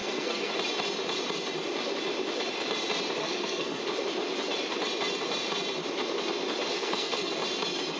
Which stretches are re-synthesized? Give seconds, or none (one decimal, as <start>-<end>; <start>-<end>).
0.0-0.5; 3.2-3.8; 6.7-7.3